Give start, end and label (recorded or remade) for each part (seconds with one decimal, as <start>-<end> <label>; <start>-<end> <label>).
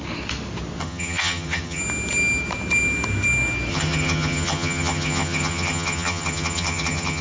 0.0-0.8 recorded; 0.8-1.8 remade; 1.8-3.7 recorded; 3.7-7.2 remade